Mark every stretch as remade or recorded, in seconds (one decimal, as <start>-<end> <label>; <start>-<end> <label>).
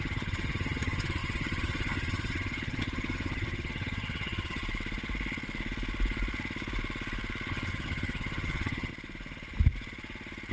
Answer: 0.0-4.6 remade; 4.6-7.5 recorded; 7.5-8.9 remade; 8.9-10.5 recorded